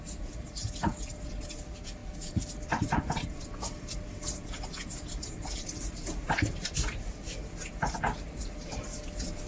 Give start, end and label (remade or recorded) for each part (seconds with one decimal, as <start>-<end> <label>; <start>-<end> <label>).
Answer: 0.0-9.5 recorded